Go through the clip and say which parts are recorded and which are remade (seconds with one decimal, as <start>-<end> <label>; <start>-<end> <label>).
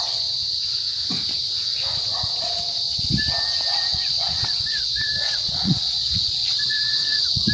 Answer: 0.0-3.9 recorded; 3.9-7.5 remade